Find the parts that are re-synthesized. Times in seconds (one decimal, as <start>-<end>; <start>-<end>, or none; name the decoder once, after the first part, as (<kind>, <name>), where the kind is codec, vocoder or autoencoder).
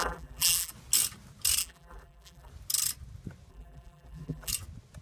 0.0-0.7 (vocoder, BigVGAN v2); 1.6-2.5; 3.5-4.5